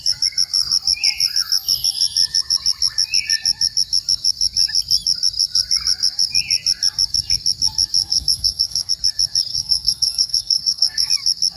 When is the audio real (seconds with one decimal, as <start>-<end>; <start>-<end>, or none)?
0.0-8.0; 8.9-9.5; 11.1-11.6